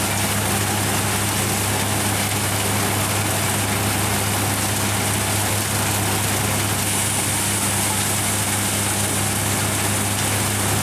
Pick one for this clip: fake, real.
real